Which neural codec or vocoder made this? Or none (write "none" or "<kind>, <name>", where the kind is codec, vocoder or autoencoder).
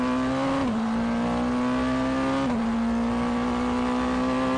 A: none